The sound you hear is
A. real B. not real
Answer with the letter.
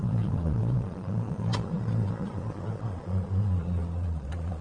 B